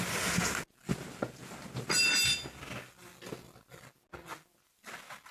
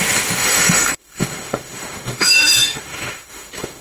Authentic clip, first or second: first